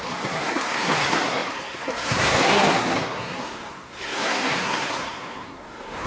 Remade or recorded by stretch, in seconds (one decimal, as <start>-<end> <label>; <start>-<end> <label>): 0.0-6.1 remade